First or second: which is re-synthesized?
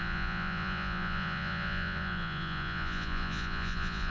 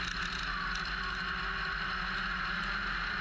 first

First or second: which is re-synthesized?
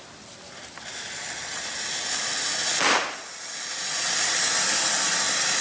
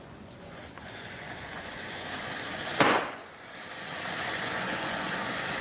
second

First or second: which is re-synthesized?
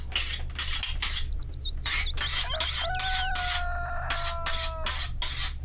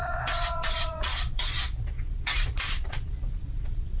second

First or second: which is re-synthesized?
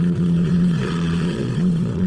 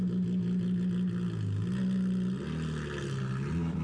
first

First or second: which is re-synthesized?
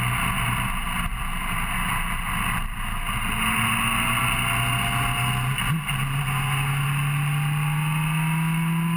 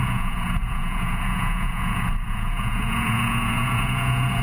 second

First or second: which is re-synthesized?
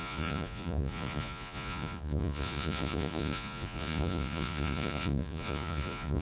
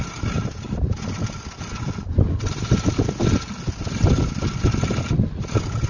first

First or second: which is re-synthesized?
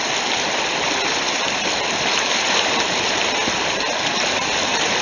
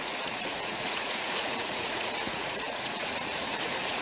second